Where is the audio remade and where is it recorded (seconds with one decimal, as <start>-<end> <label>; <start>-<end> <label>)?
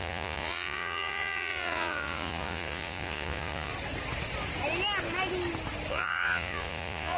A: 0.0-3.7 remade; 3.7-5.9 recorded; 5.9-7.2 remade